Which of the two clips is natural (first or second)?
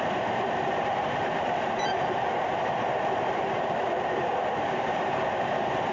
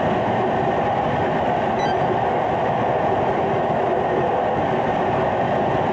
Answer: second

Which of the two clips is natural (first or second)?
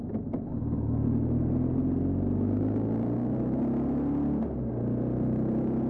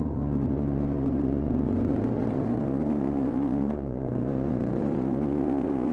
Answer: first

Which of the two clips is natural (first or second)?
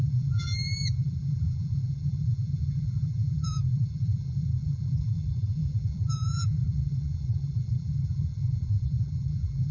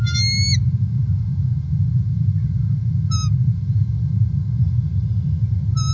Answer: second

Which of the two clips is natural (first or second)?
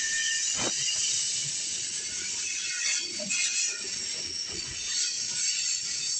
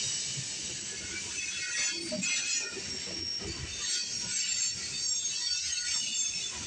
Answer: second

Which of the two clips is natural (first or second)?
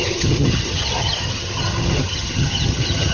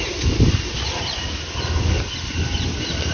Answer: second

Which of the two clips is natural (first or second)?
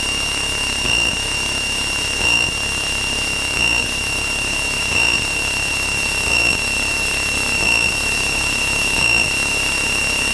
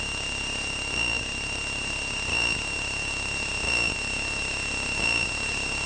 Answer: second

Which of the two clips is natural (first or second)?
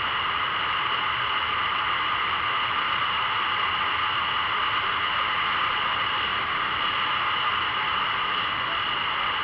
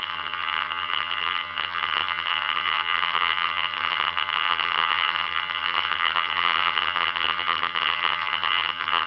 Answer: first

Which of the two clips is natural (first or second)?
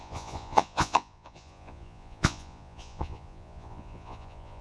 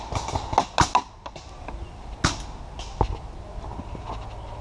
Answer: second